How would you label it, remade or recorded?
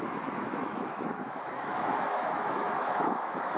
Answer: remade